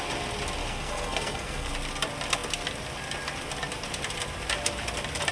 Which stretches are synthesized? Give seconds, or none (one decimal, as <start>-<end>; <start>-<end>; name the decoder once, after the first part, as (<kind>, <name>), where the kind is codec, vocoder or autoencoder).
0.6-1.7 (codec, SNAC)